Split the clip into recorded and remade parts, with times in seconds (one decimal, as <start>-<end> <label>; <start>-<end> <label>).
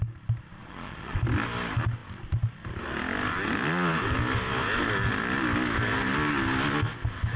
0.0-0.6 recorded; 0.6-1.2 remade; 1.2-7.4 recorded